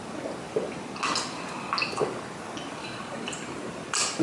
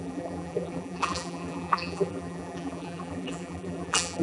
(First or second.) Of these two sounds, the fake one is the second